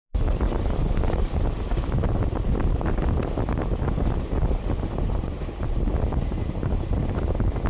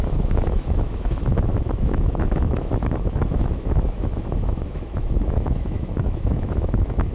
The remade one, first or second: second